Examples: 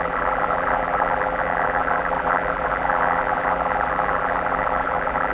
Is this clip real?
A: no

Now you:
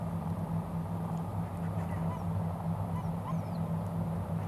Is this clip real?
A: yes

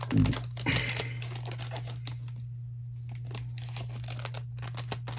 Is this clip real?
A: yes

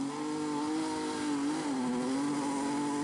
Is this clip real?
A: yes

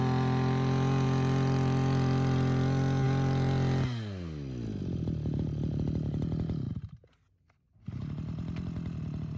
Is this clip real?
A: yes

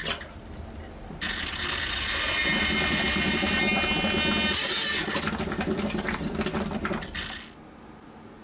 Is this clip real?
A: yes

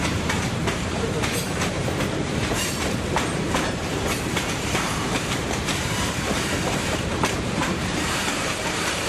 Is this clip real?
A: no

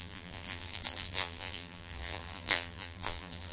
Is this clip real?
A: no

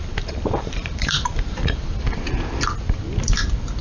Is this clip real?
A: no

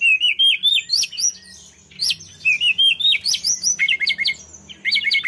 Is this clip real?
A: yes